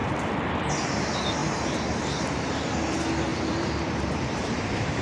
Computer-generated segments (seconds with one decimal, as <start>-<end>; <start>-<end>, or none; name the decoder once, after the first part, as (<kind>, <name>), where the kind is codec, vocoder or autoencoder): 0.0-0.7 (vocoder, BigVGAN v2); 1.4-2.5; 3.3-5.0